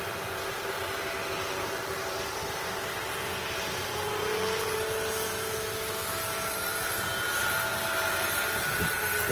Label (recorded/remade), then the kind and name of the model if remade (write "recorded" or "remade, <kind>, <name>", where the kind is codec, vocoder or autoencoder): recorded